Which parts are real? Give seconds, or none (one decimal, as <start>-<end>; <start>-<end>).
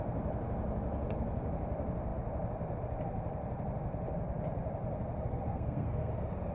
0.0-5.5; 6.1-6.5